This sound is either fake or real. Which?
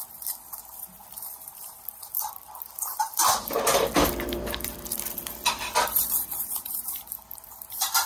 fake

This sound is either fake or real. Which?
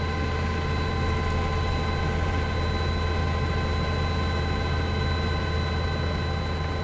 real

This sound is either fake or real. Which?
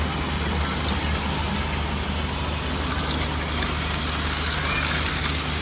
real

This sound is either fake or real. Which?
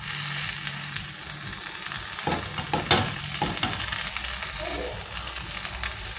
real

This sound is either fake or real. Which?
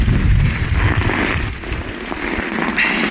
real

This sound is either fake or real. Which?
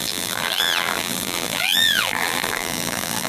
fake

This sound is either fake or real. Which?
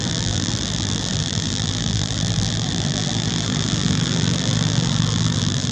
fake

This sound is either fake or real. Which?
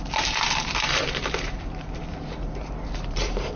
fake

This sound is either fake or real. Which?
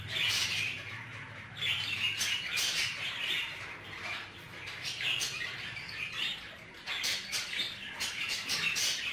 fake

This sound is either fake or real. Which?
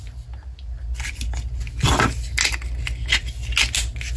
real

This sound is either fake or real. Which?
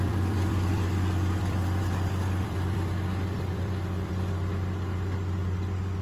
fake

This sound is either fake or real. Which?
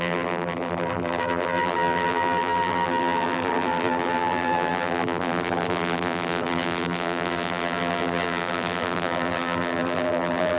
fake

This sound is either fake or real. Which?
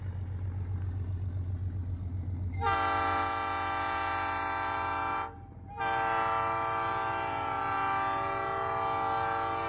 real